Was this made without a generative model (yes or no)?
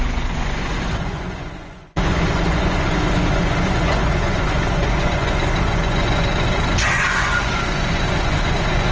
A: no